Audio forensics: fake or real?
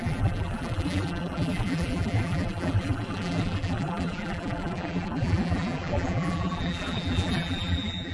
fake